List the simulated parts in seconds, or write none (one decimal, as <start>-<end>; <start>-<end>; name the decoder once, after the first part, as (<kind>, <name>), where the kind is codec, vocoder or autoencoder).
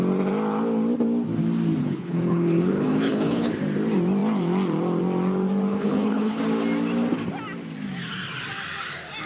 1.8-3.5 (codec, HILCodec); 5.7-6.4